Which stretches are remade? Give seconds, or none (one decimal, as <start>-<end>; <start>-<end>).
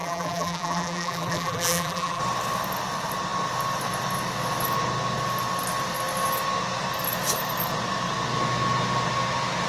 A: 0.0-2.2